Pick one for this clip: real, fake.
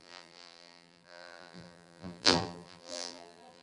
fake